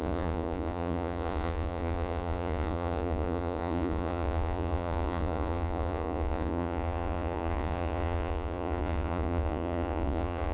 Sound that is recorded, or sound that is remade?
remade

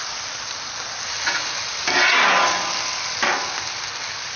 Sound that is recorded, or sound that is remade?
recorded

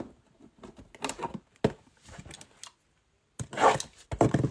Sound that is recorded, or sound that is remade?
recorded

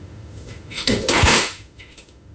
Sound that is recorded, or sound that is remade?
remade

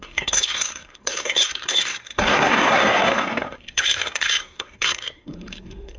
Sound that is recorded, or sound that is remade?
remade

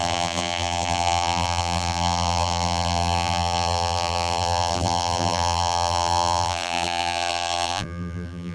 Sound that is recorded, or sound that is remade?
remade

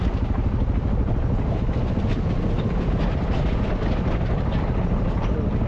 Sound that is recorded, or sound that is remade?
recorded